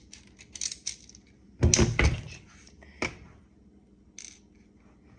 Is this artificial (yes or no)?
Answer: no